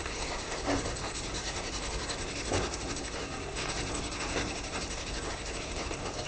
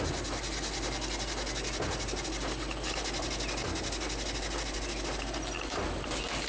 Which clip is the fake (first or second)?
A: first